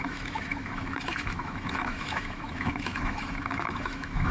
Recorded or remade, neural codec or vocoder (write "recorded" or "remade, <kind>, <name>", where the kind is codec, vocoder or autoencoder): remade, autoencoder, DAC-VAE